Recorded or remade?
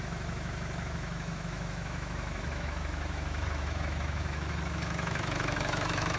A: remade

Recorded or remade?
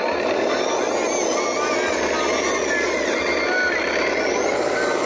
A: recorded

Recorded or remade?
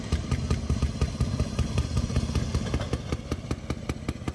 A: recorded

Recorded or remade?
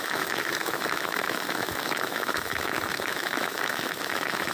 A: remade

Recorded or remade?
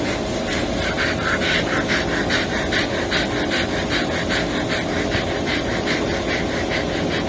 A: recorded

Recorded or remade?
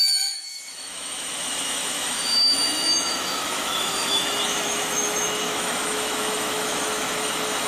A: remade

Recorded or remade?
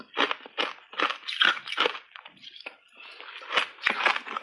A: recorded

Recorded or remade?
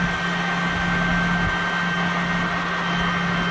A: recorded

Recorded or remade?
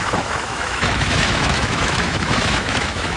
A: remade